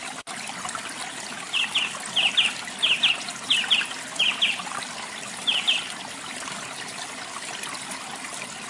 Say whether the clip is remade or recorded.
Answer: recorded